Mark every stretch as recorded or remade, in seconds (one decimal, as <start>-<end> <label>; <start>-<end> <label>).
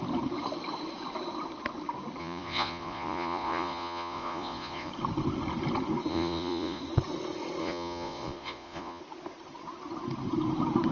0.0-2.2 recorded; 2.2-4.9 remade; 4.9-6.1 recorded; 6.1-6.8 remade; 6.8-7.6 recorded; 7.6-9.0 remade; 9.0-10.9 recorded